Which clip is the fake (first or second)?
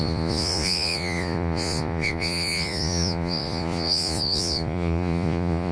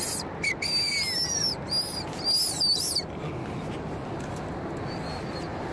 first